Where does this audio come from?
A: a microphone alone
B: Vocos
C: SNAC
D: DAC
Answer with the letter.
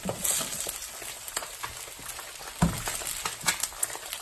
A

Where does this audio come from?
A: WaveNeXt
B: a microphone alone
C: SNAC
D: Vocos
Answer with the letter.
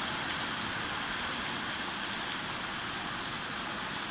B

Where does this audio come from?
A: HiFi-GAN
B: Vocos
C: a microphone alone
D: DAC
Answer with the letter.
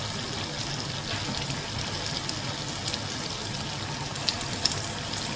C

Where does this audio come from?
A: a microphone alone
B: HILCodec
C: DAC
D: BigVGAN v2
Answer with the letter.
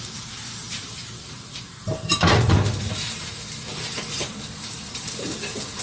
D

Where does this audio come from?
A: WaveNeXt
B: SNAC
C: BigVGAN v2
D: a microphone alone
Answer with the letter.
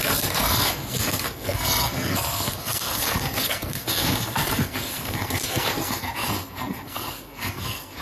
B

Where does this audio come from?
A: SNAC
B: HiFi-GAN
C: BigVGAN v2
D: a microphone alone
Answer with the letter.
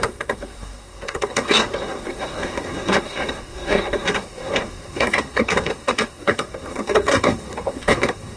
A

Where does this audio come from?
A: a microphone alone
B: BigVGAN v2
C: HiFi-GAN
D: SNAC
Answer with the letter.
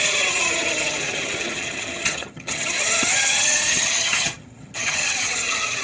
C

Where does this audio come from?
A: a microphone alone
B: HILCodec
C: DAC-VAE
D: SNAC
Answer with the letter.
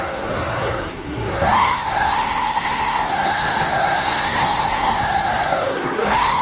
D